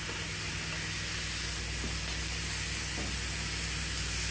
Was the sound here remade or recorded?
recorded